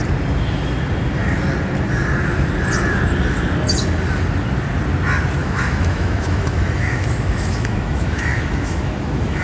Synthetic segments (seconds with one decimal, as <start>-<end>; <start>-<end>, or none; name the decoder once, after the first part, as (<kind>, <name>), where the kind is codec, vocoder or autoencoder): 5.4-9.4 (autoencoder, DAC-VAE)